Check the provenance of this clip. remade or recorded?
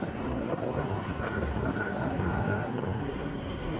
remade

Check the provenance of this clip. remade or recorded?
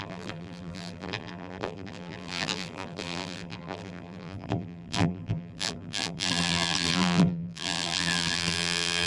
remade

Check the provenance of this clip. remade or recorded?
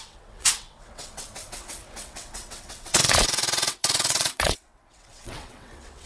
remade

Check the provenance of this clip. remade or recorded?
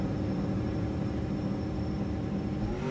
remade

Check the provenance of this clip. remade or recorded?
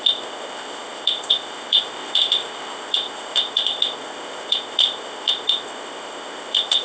remade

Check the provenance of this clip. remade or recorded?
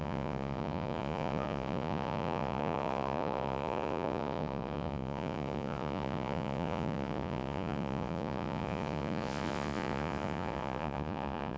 remade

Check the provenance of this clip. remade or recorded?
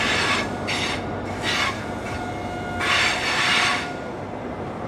recorded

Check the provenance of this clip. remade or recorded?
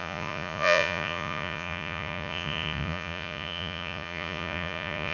remade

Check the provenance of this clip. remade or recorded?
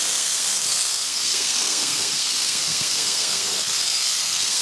remade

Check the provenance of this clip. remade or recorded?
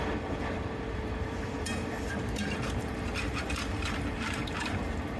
remade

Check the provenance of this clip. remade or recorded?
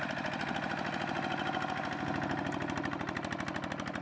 recorded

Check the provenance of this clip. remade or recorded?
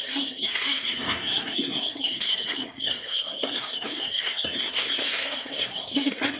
remade